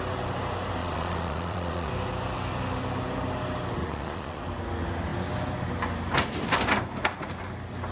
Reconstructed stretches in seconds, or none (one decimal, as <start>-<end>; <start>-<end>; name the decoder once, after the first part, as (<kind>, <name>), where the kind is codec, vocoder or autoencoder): 0.8-1.9 (vocoder, Vocos); 3.8-4.4